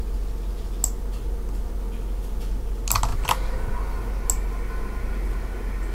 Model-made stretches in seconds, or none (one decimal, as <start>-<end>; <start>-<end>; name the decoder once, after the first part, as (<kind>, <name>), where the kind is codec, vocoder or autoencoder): 3.1-4.1 (vocoder, BigVGAN v2)

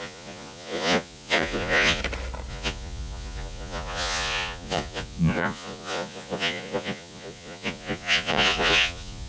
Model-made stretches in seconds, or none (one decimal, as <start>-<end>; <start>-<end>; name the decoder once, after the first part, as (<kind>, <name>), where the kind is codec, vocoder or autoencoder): 0.0-2.0 (vocoder, Vocos); 2.5-9.3

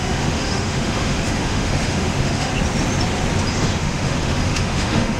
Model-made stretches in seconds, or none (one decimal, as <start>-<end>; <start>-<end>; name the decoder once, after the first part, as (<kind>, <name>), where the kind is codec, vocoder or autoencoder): 0.0-2.5 (autoencoder, DAC-VAE); 3.5-5.2

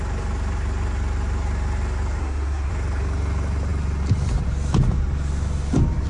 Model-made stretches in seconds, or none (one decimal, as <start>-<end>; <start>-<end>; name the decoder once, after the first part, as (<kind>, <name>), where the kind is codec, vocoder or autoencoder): 2.2-2.7 (codec, SNAC)

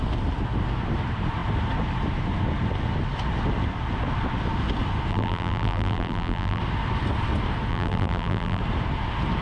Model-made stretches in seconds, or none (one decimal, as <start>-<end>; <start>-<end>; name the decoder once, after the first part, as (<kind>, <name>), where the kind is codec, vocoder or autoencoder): 5.1-6.6 (vocoder, BigVGAN v2); 7.7-8.6

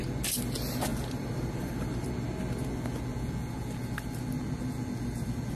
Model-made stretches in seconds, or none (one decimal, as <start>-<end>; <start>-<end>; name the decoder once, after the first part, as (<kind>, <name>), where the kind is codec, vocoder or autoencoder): 0.9-2.1 (vocoder, BigVGAN v2)

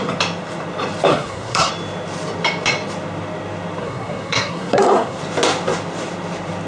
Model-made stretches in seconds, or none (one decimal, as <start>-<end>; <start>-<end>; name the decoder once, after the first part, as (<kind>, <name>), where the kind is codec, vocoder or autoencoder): 1.1-1.7 (codec, SNAC); 3.8-5.2